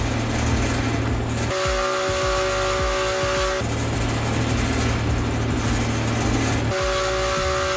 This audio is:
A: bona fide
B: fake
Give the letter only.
A